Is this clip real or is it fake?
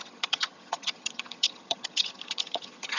fake